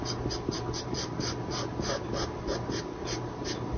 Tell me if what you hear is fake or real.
real